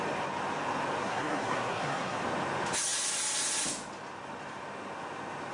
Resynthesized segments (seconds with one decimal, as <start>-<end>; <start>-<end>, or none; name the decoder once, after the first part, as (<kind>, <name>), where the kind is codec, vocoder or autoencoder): 1.0-2.2 (codec, SNAC)